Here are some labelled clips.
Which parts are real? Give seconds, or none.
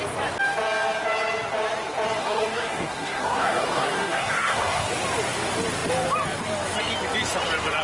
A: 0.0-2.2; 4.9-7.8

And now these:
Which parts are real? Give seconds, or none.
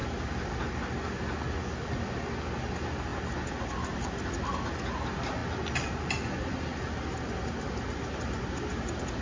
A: 0.0-9.2